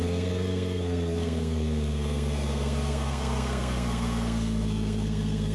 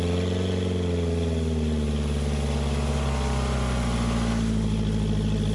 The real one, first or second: second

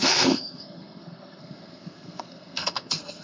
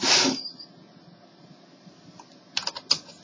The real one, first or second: second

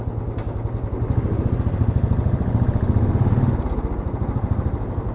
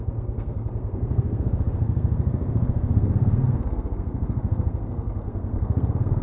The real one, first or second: first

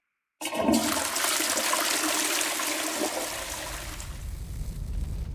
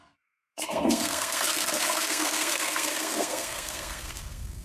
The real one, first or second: first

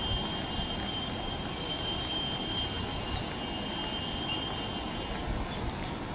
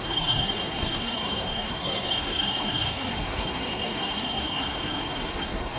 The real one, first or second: first